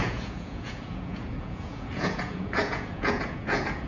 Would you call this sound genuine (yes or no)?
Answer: no